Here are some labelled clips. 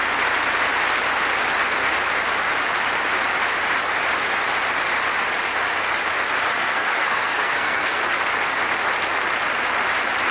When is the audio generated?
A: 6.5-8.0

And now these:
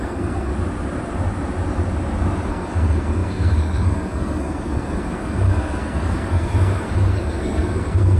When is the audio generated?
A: 0.0-0.5; 2.5-8.2

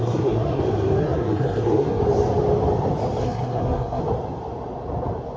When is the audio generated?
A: 0.0-0.6; 1.0-2.0; 3.2-4.0

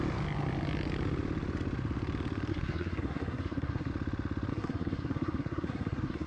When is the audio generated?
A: 2.5-3.9; 4.5-6.3

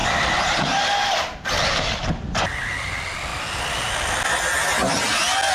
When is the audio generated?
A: none

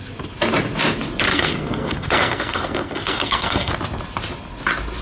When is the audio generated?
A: 1.3-3.7

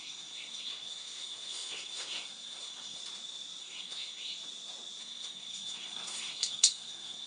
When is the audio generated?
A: 0.0-3.0; 3.6-4.3; 5.0-7.3

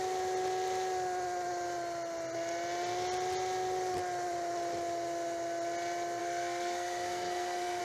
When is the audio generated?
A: 6.2-7.8